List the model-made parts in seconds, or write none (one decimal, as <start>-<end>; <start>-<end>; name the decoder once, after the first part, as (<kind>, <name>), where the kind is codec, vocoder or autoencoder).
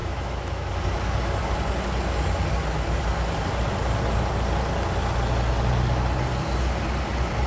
0.0-0.7 (autoencoder, DAC-VAE)